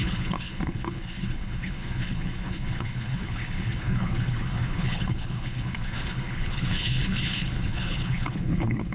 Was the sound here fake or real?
fake